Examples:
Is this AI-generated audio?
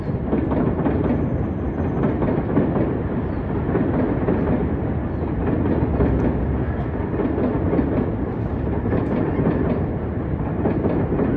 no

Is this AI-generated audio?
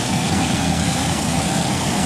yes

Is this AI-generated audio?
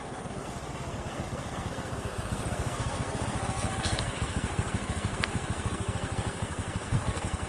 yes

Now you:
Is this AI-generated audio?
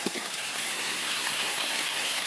yes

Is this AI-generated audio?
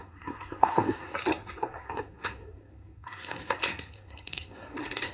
yes